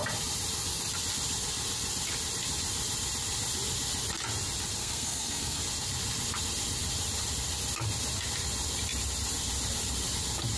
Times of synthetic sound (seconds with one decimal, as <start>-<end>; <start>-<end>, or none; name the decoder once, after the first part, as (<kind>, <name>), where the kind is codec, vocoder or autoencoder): 4.8-5.6 (codec, SNAC)